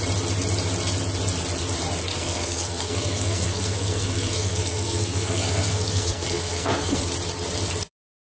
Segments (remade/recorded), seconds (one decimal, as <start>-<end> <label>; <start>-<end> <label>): 0.0-2.1 recorded; 2.1-7.0 remade; 7.0-8.4 recorded